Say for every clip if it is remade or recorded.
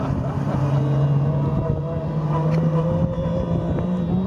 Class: recorded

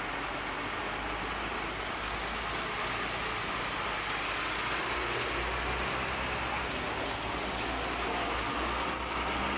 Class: recorded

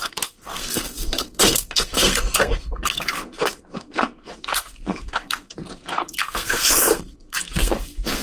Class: remade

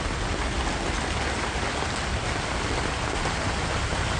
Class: recorded